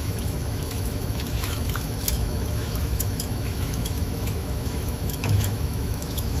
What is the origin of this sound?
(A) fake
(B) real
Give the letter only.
A